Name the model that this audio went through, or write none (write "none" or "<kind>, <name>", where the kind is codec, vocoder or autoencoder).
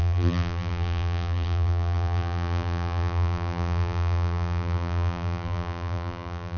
vocoder, BigVGAN v2